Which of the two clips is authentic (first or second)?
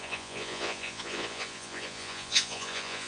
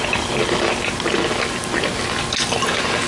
second